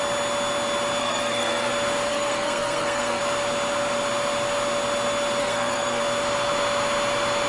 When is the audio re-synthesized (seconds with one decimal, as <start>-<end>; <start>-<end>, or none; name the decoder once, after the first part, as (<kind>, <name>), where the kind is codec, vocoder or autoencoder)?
1.0-1.7 (codec, SNAC); 2.1-3.2; 5.4-6.0